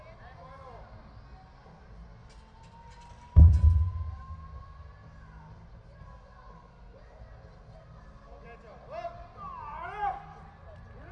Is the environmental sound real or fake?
real